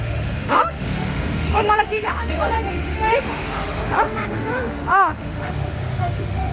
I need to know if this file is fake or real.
fake